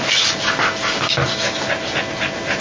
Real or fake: real